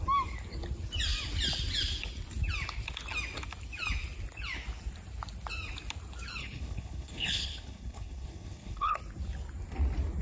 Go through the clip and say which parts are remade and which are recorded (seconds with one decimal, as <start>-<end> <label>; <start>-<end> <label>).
0.0-6.4 recorded; 6.4-9.0 remade; 9.0-10.2 recorded